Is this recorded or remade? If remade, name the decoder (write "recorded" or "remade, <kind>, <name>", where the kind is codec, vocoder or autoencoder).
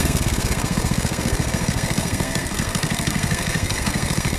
remade, codec, SNAC